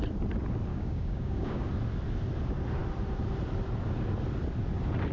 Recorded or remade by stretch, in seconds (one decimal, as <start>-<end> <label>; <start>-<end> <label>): 0.0-0.7 recorded; 0.7-1.7 remade; 1.7-5.1 recorded